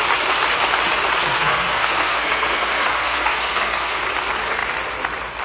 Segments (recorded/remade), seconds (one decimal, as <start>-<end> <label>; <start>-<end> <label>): 0.0-1.2 recorded; 1.2-4.0 remade; 4.0-5.4 recorded